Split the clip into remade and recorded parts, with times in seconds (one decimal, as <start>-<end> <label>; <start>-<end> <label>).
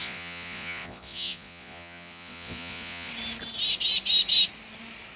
0.0-3.1 remade; 3.1-5.2 recorded